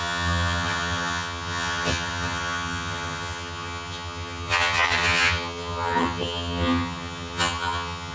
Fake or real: fake